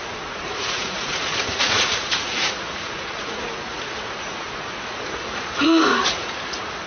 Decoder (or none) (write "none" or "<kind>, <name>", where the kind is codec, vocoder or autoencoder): vocoder, Vocos